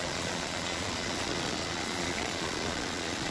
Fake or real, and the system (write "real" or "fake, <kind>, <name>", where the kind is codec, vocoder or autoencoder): fake, vocoder, Vocos